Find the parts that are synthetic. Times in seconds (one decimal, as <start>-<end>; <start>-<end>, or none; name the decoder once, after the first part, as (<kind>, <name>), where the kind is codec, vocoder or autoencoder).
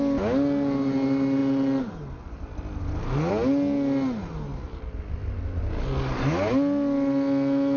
none